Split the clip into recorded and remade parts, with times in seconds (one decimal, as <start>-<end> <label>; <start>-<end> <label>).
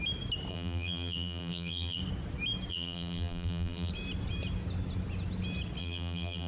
0.0-0.5 recorded; 0.5-2.0 remade; 2.0-2.7 recorded; 2.7-3.9 remade; 3.9-5.8 recorded; 5.8-6.5 remade